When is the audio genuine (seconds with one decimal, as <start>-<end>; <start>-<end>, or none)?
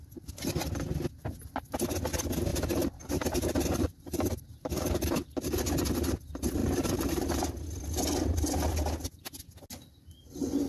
0.0-2.5; 5.6-6.6; 7.4-10.7